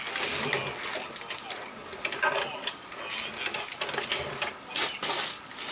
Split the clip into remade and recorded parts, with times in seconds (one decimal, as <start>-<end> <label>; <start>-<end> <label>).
0.0-5.7 recorded